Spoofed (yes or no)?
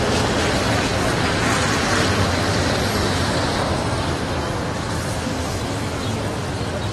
no